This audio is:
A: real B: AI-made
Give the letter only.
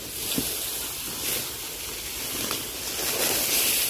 A